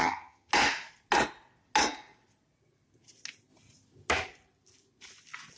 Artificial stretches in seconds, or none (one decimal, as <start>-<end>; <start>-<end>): 0.0-0.5